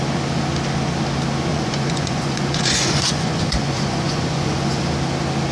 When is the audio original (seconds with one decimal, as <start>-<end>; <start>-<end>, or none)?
0.0-1.5; 4.8-5.5